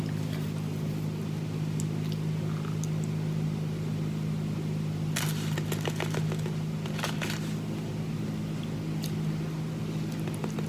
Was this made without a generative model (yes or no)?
yes